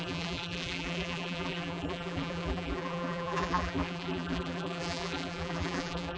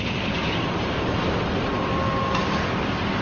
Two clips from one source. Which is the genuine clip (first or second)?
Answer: second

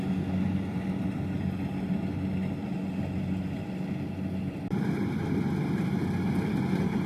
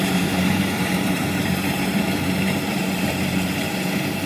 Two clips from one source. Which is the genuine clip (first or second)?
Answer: first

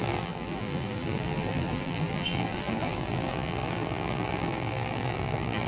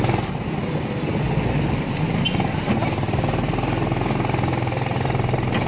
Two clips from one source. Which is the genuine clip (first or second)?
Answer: second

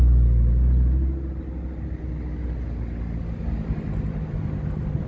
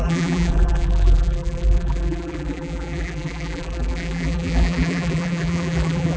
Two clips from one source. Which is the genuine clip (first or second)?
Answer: first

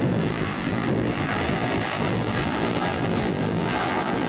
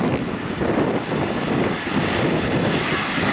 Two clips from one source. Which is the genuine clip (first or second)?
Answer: second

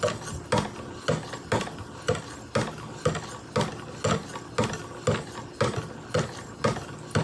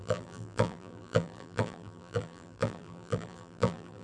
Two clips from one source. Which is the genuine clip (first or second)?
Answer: first